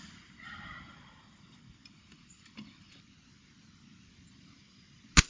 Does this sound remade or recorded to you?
recorded